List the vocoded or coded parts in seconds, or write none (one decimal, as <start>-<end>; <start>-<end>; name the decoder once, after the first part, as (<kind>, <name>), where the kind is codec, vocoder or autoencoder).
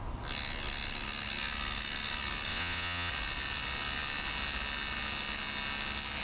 2.5-3.1 (vocoder, WaveNeXt)